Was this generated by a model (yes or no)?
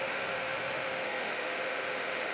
yes